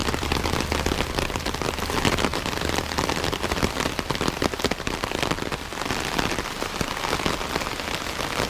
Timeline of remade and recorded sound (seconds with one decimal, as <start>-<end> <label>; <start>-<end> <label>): 0.0-0.6 remade; 0.6-2.3 recorded; 2.3-4.2 remade; 4.2-8.5 recorded